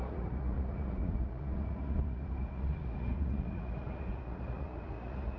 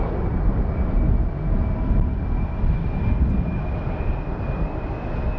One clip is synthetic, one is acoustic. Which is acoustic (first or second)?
second